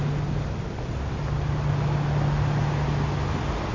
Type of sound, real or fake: real